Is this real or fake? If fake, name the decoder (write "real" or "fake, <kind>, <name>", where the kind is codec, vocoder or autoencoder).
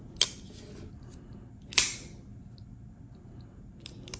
real